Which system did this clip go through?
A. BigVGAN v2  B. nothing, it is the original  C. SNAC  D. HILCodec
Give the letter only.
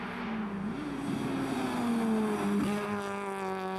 B